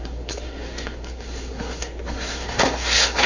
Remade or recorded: remade